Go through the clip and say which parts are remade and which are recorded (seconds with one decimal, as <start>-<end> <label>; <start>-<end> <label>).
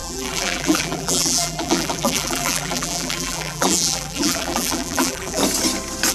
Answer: 0.0-5.4 remade; 5.4-6.1 recorded